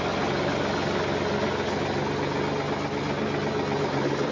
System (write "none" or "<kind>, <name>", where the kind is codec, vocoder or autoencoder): none